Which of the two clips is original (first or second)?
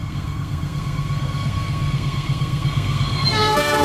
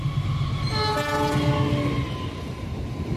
second